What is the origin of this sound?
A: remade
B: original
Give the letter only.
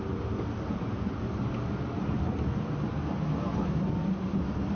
B